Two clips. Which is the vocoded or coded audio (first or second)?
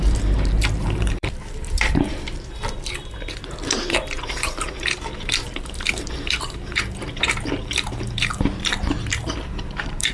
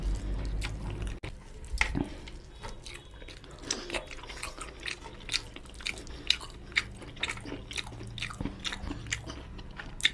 first